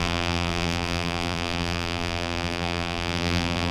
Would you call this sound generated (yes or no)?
yes